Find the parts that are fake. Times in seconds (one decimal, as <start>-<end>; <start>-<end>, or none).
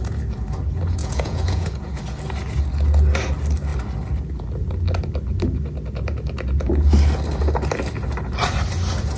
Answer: 1.0-2.0